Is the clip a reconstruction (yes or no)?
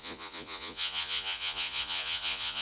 yes